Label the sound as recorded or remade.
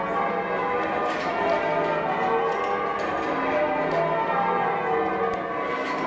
recorded